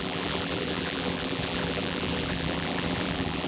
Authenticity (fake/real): fake